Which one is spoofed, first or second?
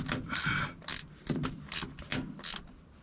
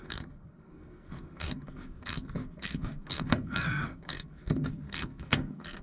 second